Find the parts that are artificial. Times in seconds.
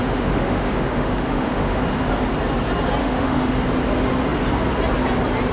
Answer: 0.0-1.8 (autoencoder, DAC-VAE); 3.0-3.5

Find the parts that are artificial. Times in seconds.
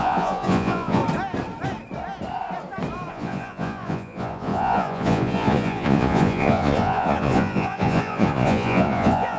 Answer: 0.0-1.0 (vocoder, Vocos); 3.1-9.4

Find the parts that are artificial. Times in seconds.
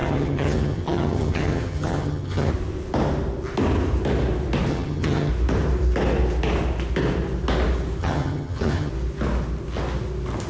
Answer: 0.0-2.5 (vocoder, HiFi-GAN); 4.7-5.3; 8.0-8.9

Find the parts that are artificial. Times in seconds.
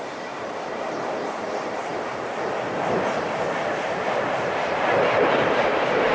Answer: none